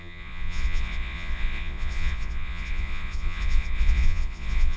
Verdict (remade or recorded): remade